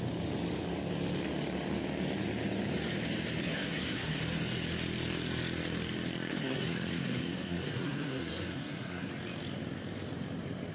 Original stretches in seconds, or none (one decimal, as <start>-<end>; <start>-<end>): 0.0-3.4; 4.2-6.3; 9.1-10.7